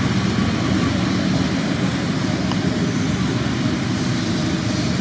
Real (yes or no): yes